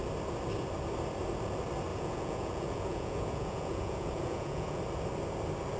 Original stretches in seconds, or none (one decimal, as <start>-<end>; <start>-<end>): 0.0-1.9; 4.8-5.8